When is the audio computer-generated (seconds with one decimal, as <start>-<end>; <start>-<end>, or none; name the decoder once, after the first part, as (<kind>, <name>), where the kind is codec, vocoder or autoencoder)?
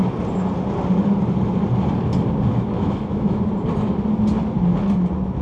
2.5-3.4 (autoencoder, DAC-VAE)